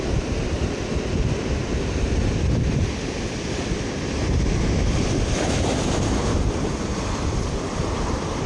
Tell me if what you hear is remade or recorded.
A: remade